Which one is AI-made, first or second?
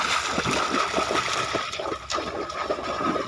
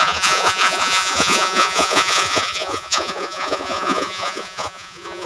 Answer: second